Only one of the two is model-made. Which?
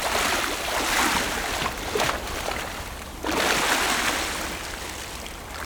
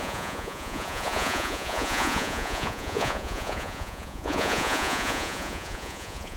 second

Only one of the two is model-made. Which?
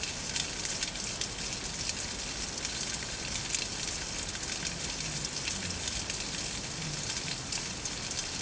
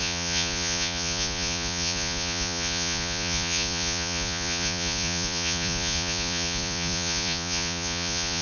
second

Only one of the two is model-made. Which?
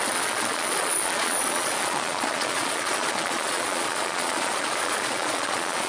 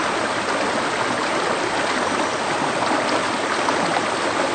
first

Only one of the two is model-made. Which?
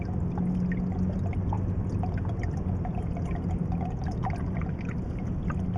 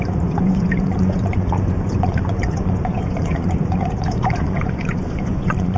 second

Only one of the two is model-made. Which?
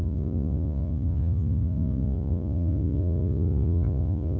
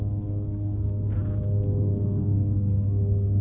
first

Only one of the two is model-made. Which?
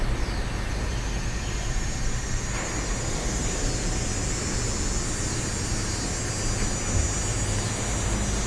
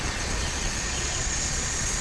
second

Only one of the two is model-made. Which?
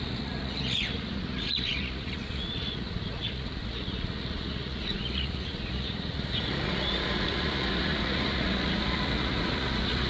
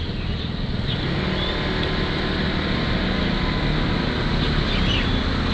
first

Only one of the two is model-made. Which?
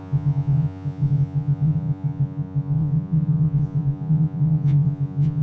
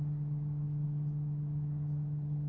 first